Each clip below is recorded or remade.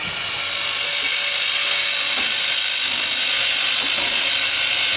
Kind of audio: recorded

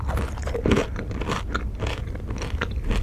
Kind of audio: recorded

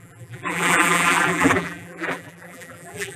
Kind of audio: remade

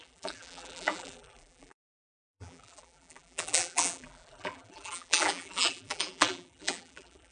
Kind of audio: remade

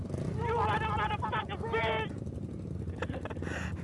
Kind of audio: recorded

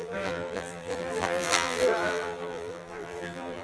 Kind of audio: remade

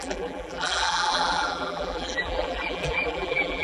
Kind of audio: remade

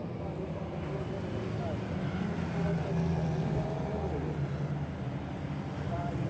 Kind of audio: recorded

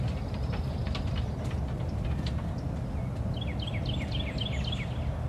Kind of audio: recorded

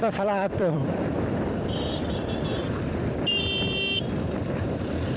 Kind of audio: remade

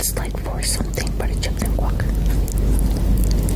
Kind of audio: recorded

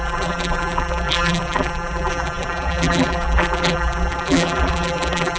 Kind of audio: remade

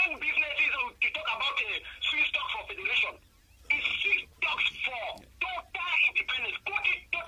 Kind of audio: recorded